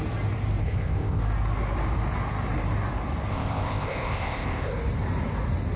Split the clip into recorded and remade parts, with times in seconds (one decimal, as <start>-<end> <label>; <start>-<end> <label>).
0.0-0.6 recorded; 0.6-1.2 remade; 1.2-3.3 recorded; 3.3-4.7 remade; 4.7-5.8 recorded